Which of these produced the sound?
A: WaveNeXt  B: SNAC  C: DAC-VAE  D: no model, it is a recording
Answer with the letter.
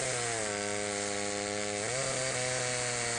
D